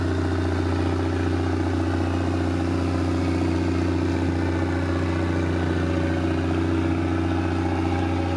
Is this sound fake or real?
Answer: real